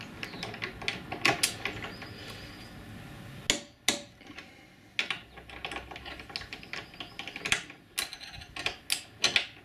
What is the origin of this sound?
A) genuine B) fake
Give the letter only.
A